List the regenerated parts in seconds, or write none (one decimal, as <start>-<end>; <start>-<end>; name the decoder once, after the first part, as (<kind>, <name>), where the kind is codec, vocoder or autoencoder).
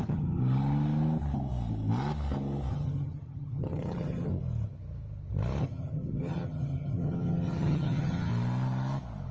0.0-0.4 (vocoder, HiFi-GAN); 2.7-4.3; 5.6-8.3